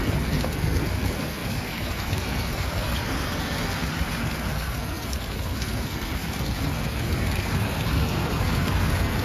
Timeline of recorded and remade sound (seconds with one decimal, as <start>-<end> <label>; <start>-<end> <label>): 0.0-9.2 remade

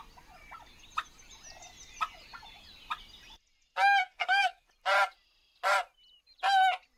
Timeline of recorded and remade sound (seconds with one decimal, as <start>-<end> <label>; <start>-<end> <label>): 0.0-4.0 recorded; 4.0-4.7 remade; 4.7-7.0 recorded

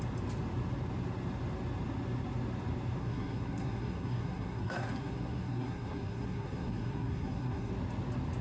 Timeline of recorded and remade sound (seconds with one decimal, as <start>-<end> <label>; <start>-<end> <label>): 0.0-3.0 recorded; 3.0-7.7 remade; 7.7-8.4 recorded